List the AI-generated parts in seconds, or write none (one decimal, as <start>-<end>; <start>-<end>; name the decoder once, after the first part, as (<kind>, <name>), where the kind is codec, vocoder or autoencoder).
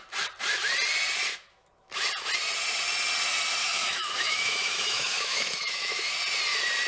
1.3-1.9 (autoencoder, DAC-VAE); 3.6-6.1